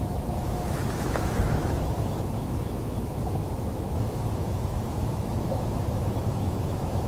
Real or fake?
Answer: fake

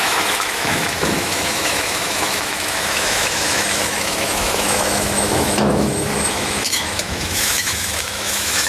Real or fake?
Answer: fake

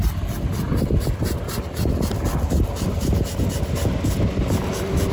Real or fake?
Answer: real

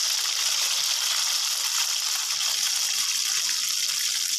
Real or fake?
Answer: real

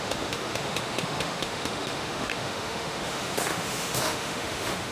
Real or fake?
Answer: fake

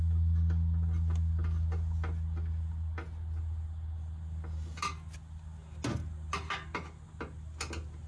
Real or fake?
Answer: real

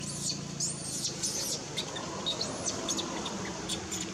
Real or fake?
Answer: real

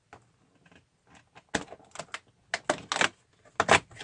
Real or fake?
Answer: real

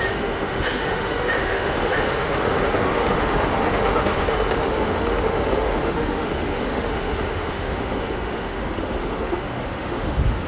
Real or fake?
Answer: fake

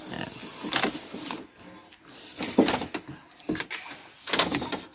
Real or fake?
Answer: real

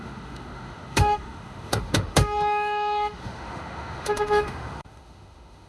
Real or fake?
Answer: fake